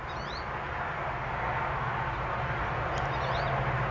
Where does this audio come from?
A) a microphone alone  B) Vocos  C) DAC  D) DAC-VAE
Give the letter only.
A